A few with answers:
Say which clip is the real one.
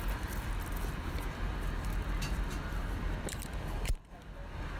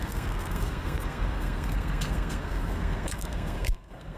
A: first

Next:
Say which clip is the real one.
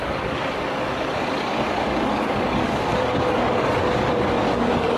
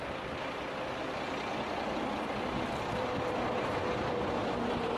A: second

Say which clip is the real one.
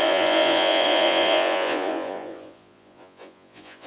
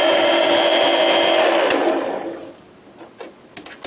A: second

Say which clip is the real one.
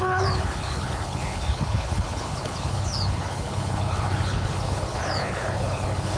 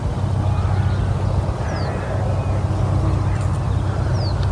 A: second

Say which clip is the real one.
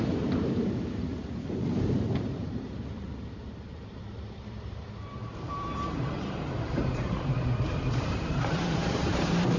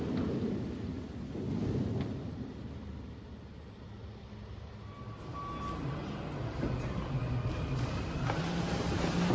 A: second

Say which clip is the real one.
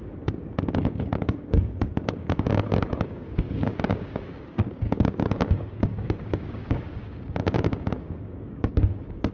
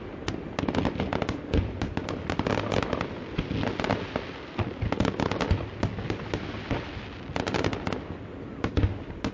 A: second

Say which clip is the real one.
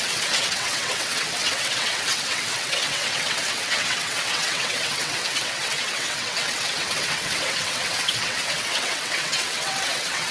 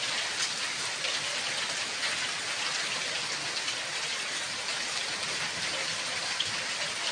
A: second